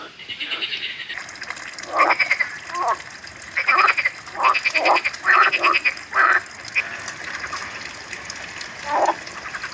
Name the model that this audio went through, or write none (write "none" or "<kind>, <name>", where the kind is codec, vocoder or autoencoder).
none